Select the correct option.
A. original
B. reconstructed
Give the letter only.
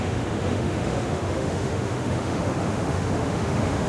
B